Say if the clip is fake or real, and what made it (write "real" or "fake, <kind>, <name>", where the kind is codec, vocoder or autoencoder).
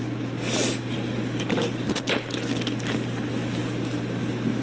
real